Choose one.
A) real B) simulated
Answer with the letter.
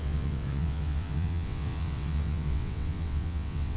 B